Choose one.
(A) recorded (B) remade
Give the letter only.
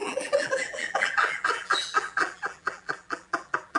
B